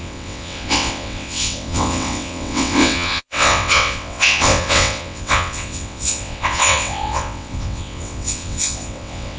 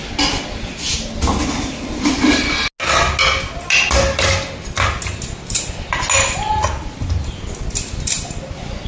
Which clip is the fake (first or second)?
first